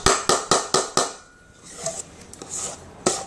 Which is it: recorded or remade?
recorded